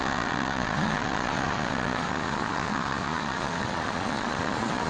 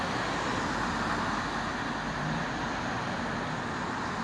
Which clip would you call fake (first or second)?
first